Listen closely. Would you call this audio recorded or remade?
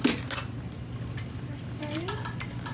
recorded